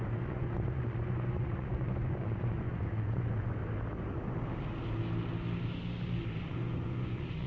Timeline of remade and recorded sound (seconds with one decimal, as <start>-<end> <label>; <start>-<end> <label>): 0.0-3.6 remade; 3.6-6.4 recorded; 6.4-7.5 remade